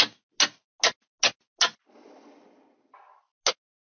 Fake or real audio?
real